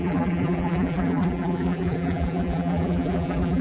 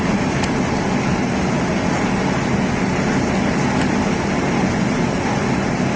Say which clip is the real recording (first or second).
second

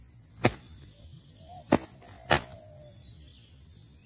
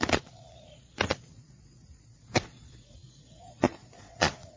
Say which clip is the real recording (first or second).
first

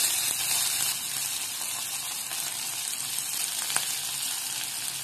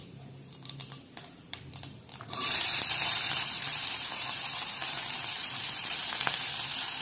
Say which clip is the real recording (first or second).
first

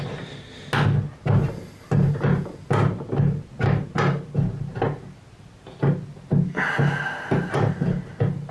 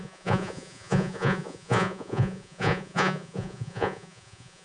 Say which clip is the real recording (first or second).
first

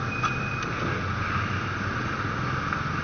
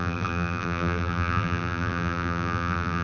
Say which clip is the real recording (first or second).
first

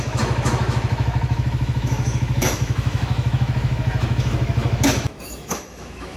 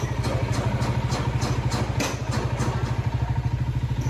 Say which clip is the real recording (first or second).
second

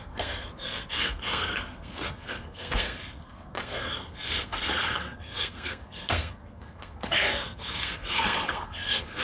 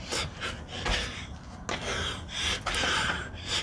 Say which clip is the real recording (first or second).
second